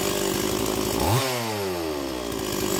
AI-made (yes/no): no